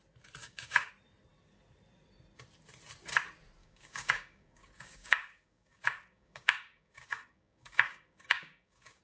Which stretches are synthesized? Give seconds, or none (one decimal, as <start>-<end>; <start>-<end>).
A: 0.4-0.9; 3.6-9.0

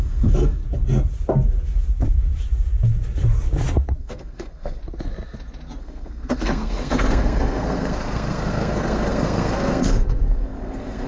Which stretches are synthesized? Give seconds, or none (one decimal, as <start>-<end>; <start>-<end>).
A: 0.0-0.6; 4.0-4.8; 5.8-11.1